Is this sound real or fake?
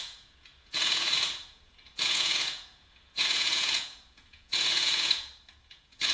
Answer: fake